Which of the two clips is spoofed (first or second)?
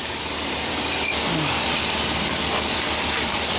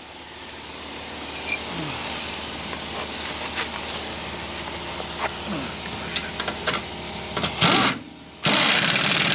first